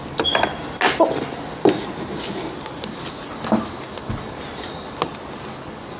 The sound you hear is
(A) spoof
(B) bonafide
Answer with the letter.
B